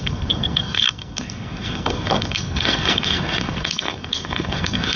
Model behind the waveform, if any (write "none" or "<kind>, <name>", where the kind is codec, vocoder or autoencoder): codec, SNAC